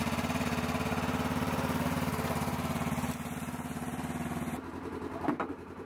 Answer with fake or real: fake